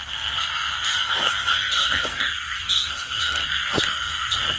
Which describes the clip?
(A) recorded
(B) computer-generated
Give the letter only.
B